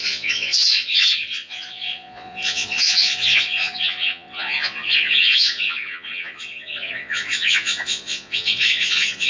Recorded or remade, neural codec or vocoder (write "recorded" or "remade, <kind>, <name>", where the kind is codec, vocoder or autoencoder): remade, vocoder, Vocos